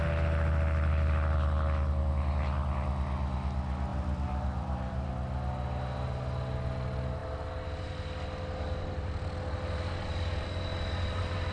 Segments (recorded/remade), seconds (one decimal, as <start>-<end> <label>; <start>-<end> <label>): 0.0-3.9 recorded; 3.9-5.1 remade; 5.1-11.5 recorded